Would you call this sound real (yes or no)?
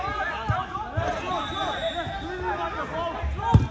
yes